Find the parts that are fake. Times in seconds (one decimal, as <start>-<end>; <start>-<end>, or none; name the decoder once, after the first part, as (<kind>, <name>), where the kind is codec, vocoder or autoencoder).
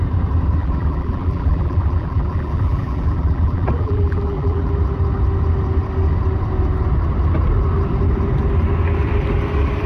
0.6-4.7 (vocoder, BigVGAN v2)